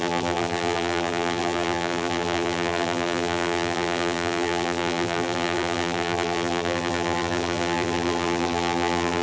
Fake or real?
fake